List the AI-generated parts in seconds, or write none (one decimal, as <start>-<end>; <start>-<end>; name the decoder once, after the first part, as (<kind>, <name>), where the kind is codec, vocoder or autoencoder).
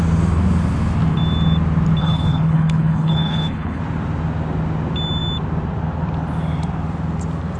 2.0-3.8 (codec, HILCodec)